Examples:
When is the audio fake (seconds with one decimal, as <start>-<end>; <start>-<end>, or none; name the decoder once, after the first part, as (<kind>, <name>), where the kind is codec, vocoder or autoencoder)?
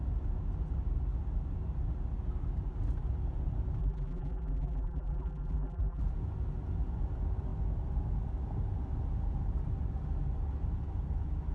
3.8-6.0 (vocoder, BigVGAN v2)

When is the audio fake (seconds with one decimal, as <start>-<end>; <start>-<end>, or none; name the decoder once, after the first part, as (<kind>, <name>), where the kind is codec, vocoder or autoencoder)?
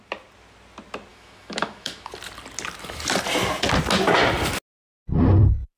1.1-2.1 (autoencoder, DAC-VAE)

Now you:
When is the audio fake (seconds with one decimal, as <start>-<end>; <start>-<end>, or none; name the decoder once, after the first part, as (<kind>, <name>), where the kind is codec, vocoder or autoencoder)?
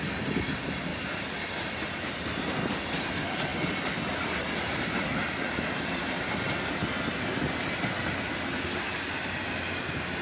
0.9-1.4 (vocoder, BigVGAN v2)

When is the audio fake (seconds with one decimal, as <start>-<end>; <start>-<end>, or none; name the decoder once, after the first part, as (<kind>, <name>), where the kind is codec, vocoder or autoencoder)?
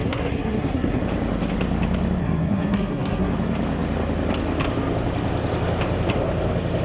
0.0-1.0 (codec, SNAC); 2.2-3.3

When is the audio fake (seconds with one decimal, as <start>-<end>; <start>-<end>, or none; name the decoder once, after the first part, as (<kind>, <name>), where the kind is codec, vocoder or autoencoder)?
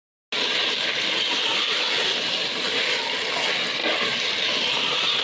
none